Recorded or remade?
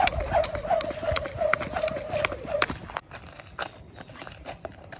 recorded